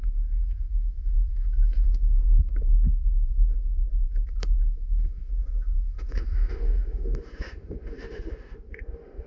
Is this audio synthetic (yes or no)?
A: yes